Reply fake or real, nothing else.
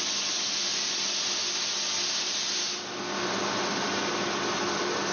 real